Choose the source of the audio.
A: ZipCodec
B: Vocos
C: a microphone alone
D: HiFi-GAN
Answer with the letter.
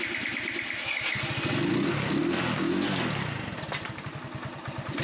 C